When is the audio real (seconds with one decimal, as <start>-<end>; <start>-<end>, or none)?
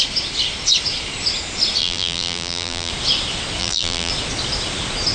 0.0-1.8; 2.9-3.6; 4.1-5.1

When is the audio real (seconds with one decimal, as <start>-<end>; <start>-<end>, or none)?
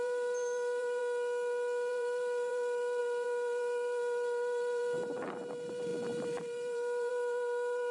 1.0-1.9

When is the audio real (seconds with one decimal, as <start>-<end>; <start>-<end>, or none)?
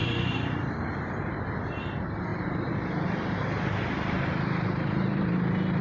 0.6-2.3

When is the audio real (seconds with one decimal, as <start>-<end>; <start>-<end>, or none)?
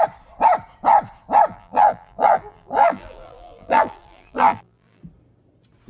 0.0-1.5; 5.0-5.9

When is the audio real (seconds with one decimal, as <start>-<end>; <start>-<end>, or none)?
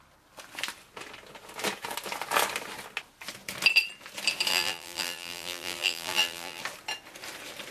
0.0-4.5; 6.6-7.7